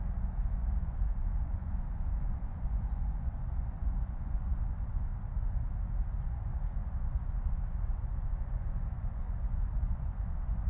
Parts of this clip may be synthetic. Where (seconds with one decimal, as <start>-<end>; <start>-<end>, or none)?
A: 0.0-5.1; 6.2-10.7